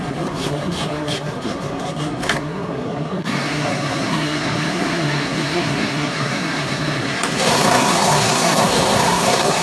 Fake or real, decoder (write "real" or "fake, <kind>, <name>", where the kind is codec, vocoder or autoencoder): fake, codec, SNAC